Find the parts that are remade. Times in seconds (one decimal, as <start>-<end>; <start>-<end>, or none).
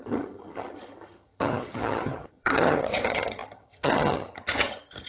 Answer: 0.0-5.1